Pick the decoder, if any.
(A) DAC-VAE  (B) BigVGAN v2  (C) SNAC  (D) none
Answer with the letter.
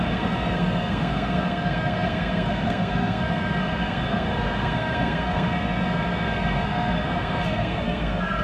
C